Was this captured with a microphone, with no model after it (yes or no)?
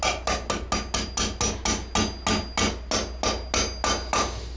yes